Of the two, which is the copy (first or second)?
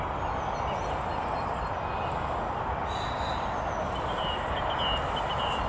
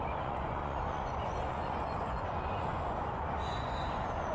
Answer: second